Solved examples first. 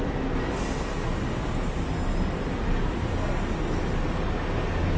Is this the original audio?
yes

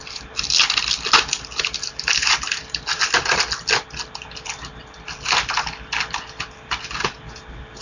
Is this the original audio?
yes